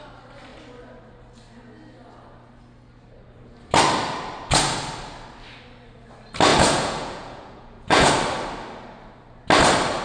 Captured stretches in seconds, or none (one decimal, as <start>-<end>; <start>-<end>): 0.0-6.5; 8.1-10.0